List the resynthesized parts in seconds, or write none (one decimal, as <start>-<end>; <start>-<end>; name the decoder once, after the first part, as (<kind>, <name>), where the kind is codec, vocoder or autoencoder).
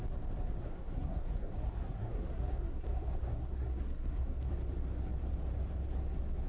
0.6-4.5 (codec, SNAC)